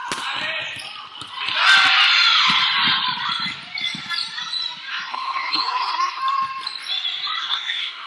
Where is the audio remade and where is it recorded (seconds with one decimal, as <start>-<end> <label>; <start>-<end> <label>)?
0.0-4.9 recorded; 4.9-6.2 remade; 6.2-7.4 recorded; 7.4-8.1 remade